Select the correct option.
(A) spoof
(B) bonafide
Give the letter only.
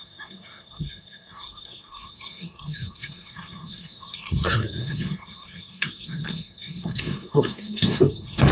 A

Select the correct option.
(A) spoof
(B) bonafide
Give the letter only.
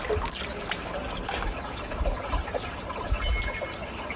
B